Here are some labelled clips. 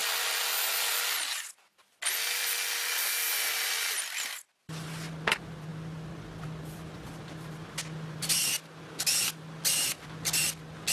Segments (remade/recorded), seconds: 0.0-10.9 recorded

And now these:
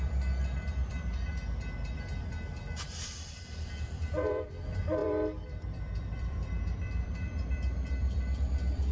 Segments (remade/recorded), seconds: 0.0-1.3 remade; 1.3-1.9 recorded; 1.9-8.9 remade